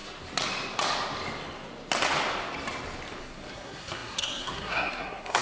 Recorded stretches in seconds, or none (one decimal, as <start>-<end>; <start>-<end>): 0.0-3.2